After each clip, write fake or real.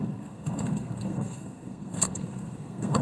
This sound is fake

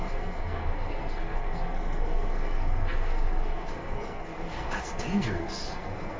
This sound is fake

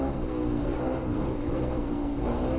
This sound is fake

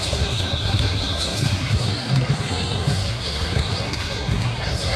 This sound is fake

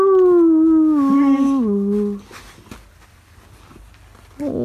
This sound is real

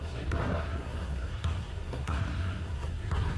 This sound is fake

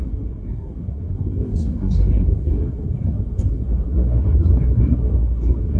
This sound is fake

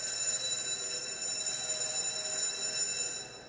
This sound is real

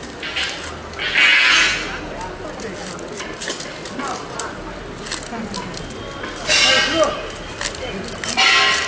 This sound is real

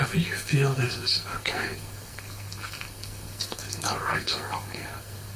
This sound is fake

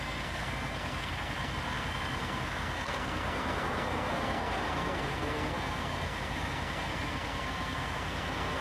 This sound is fake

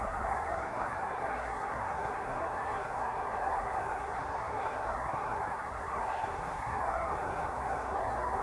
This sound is fake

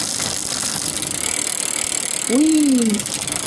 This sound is real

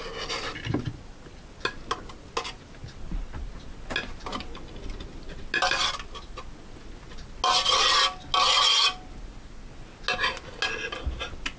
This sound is real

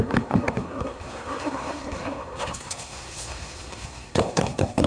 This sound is fake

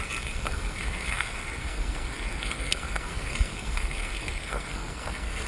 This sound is fake